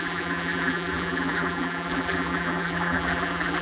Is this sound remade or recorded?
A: remade